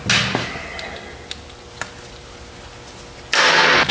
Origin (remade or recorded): recorded